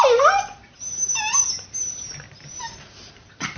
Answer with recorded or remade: remade